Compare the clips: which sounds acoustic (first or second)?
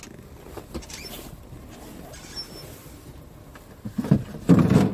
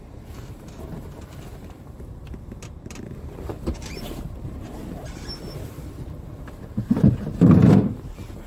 first